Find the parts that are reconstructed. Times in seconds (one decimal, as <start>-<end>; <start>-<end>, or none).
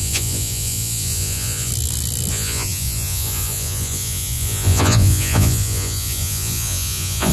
0.0-1.7; 2.3-7.3